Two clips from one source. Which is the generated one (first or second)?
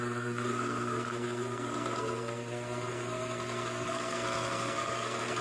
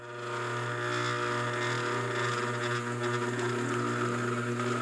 first